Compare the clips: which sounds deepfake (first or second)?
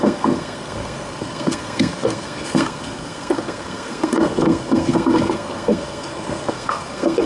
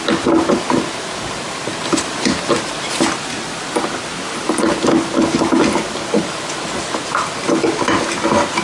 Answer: first